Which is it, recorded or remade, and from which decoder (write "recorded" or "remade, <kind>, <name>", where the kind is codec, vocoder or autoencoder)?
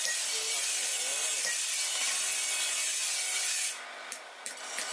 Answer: recorded